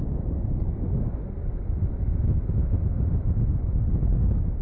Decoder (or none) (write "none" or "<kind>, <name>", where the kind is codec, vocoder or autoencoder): none